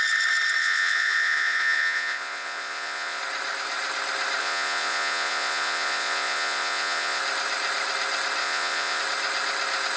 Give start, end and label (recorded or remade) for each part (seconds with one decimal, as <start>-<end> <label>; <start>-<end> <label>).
0.0-0.6 recorded; 0.6-3.2 remade; 3.2-4.4 recorded; 4.4-7.2 remade; 7.2-8.4 recorded; 8.4-9.0 remade; 9.0-10.0 recorded